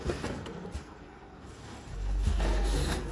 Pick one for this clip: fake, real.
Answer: fake